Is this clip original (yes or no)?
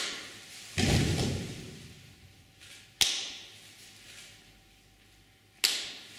yes